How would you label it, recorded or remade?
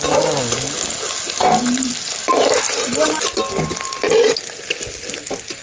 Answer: recorded